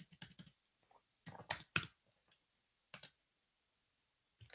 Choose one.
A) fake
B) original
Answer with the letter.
B